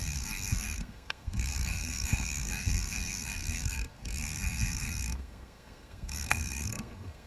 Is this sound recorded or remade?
remade